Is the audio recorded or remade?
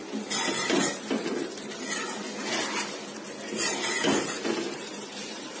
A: recorded